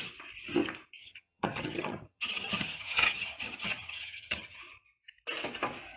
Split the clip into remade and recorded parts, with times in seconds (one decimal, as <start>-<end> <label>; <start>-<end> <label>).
0.0-1.0 recorded; 1.0-4.6 remade; 4.6-6.0 recorded